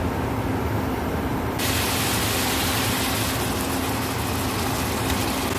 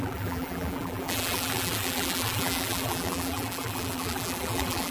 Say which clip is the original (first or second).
first